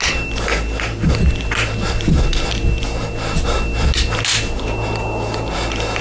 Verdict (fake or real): real